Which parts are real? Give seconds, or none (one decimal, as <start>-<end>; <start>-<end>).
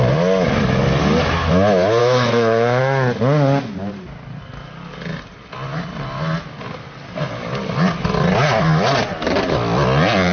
0.0-2.0; 2.8-10.3